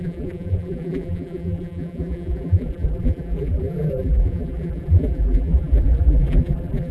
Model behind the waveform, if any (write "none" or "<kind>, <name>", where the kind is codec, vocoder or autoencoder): vocoder, BigVGAN v2